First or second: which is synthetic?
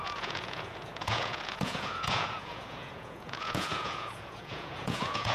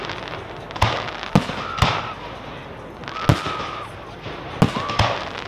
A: first